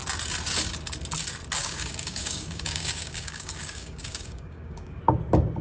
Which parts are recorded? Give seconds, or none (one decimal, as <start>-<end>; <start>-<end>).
0.0-1.6; 5.0-5.6